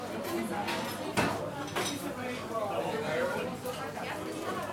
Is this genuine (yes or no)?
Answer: yes